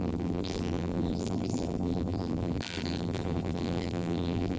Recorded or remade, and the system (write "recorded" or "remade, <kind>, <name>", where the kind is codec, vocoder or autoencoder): remade, vocoder, BigVGAN v2